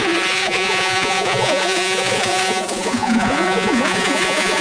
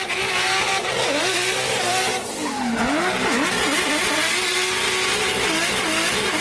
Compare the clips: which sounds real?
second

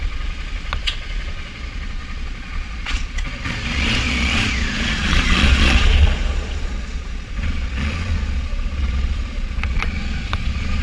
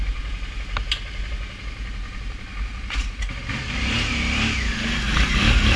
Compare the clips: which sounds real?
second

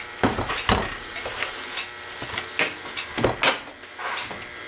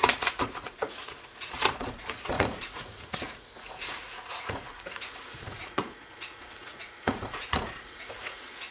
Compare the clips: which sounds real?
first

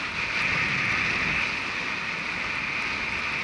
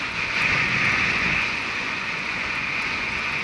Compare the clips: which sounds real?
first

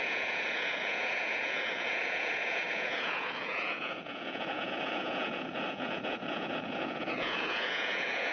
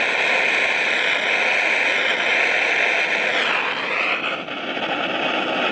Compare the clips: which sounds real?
second